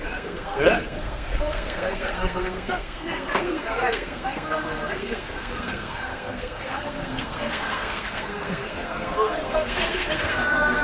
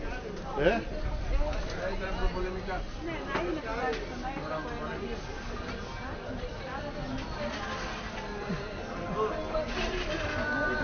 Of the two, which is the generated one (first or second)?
first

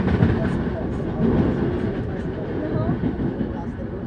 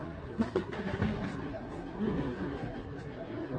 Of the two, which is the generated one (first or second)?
second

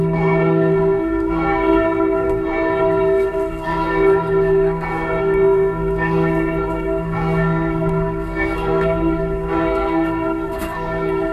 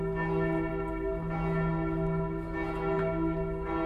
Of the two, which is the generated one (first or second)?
first